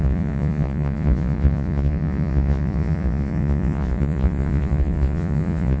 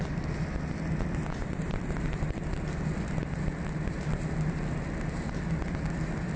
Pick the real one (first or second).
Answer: second